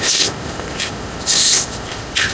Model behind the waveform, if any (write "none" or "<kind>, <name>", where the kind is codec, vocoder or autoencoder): codec, ZipCodec